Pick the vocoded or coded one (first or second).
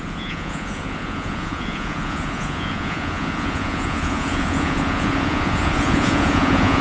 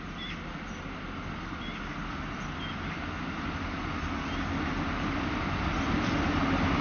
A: first